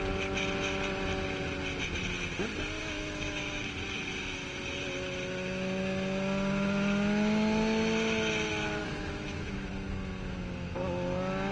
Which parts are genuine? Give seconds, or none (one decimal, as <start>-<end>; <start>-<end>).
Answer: 0.0-2.8; 3.6-8.8; 9.7-11.5